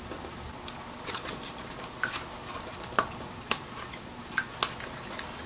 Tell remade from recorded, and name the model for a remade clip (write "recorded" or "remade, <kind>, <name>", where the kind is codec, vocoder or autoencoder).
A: recorded